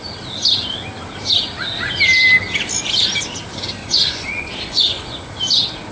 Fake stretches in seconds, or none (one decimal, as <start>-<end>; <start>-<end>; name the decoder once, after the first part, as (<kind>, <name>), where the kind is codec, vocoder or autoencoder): 3.8-5.3 (vocoder, Vocos)